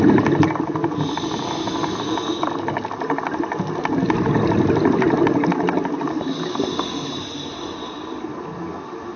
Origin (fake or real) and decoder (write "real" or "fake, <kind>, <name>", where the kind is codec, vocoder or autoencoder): real